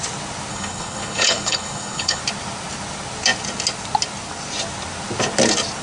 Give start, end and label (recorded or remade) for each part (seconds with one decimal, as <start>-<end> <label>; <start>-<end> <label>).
0.0-0.5 recorded; 0.5-2.2 remade; 2.2-5.8 recorded